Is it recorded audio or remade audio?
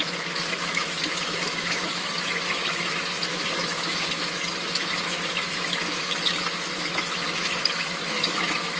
remade